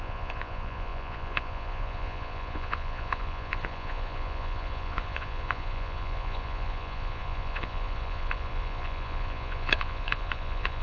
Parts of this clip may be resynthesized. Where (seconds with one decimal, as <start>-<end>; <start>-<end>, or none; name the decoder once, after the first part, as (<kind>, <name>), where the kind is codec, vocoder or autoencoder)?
0.0-10.8 (vocoder, Vocos)